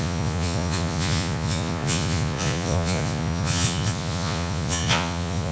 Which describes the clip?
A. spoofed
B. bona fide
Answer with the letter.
A